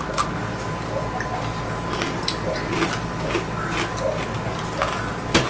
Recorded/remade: recorded